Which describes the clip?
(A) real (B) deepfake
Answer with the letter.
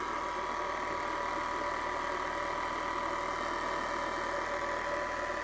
A